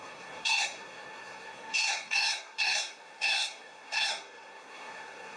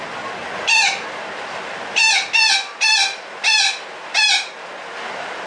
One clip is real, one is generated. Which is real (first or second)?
second